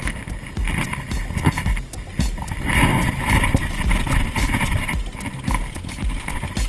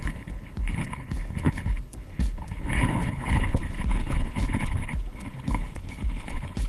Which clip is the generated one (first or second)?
second